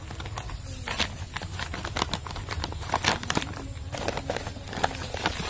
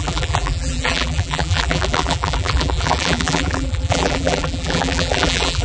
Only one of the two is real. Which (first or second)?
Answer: first